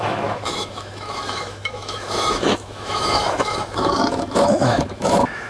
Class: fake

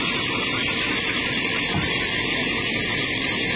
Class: real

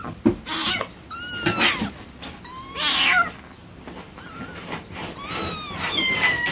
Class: real